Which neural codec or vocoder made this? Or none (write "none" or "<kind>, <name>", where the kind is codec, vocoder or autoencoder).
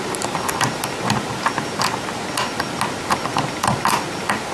none